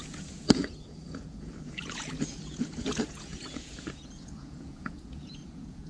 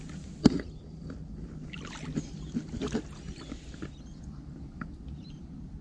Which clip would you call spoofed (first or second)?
first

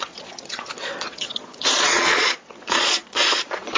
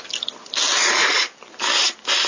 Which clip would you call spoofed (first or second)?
first